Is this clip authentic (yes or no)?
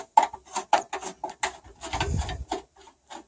yes